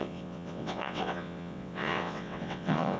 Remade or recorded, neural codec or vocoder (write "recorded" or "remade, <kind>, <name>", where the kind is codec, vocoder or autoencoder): remade, vocoder, WaveNeXt